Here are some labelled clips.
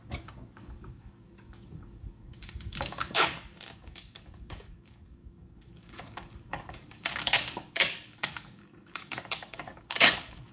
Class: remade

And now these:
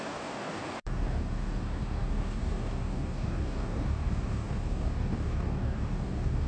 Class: remade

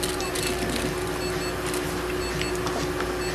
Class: recorded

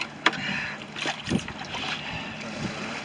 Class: recorded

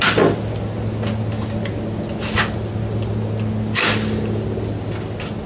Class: recorded